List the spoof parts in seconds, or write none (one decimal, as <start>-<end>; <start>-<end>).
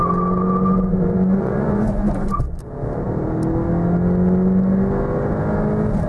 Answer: 0.9-2.6